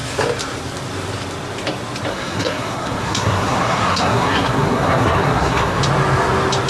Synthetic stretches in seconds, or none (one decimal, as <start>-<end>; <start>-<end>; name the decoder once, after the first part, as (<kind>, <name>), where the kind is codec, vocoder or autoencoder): 2.1-5.8 (codec, SNAC)